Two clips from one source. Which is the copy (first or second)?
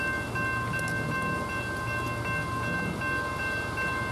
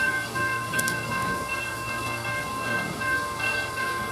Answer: second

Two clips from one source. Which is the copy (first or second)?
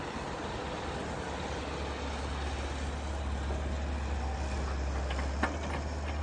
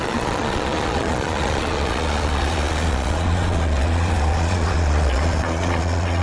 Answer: second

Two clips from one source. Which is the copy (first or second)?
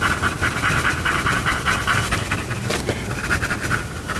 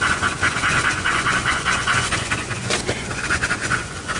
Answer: second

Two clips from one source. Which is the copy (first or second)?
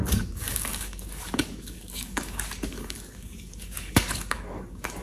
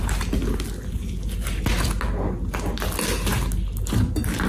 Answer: first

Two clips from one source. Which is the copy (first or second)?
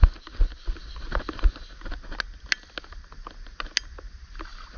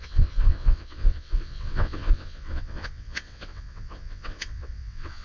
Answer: second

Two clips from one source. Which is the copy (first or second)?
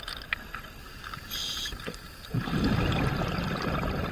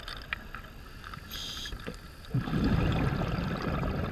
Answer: first